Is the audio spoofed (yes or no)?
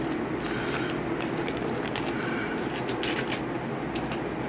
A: no